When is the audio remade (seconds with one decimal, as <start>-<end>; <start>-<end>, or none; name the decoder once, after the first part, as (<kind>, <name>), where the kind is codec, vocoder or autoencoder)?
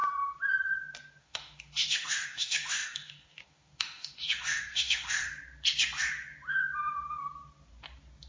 1.2-5.3 (autoencoder, DAC-VAE)